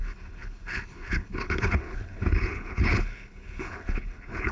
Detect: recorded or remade remade